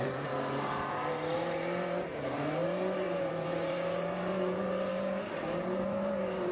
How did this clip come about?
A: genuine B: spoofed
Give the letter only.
B